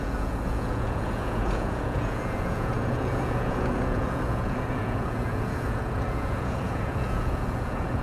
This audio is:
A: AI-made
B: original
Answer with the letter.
A